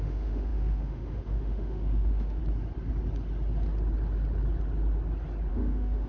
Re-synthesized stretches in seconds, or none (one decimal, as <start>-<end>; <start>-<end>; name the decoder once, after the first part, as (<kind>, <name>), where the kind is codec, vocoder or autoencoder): 0.0-2.4 (autoencoder, DAC-VAE); 5.5-6.1